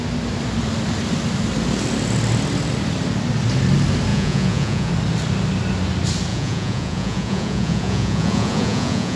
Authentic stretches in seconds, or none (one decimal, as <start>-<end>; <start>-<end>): 0.0-4.1; 4.9-6.3